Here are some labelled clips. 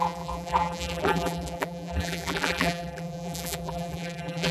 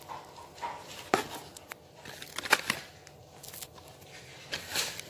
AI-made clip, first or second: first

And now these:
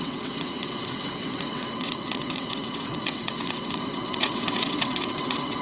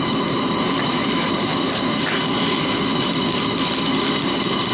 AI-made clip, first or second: first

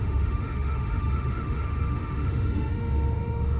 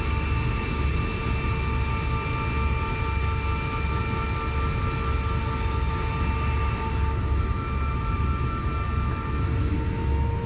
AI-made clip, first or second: first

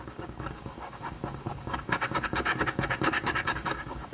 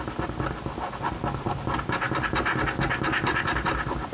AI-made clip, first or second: first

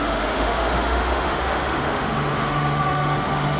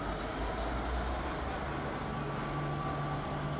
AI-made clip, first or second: first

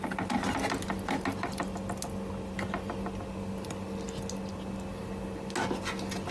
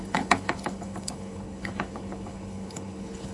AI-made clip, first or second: second